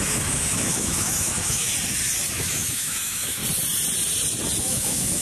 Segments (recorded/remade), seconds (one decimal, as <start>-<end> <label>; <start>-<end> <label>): 0.0-1.7 remade; 1.7-2.3 recorded; 2.3-3.4 remade; 3.4-4.6 recorded; 4.6-5.2 remade